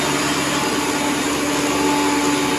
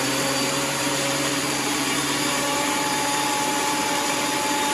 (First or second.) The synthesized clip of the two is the second